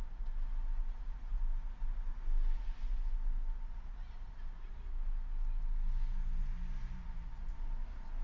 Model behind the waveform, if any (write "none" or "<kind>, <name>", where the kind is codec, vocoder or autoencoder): none